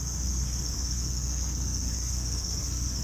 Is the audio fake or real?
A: fake